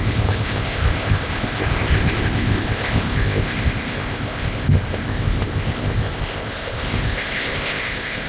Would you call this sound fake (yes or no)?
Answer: yes